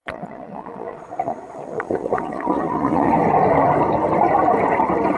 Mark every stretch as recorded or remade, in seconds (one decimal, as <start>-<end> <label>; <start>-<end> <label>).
0.0-3.1 remade; 3.1-5.2 recorded